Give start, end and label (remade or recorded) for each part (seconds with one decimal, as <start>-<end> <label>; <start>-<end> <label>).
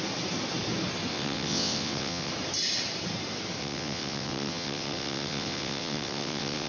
0.0-1.1 recorded; 1.1-2.3 remade; 2.3-3.6 recorded; 3.6-6.7 remade